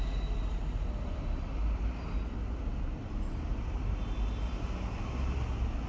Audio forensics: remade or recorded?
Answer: recorded